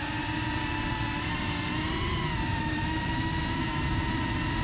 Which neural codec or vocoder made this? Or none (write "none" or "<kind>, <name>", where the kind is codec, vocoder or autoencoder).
vocoder, BigVGAN v2